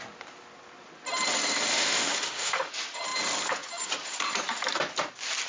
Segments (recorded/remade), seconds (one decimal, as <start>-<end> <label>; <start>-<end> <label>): 0.0-1.7 recorded; 1.7-2.7 remade; 2.7-5.5 recorded